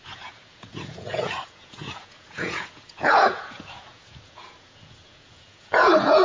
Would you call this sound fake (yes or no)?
yes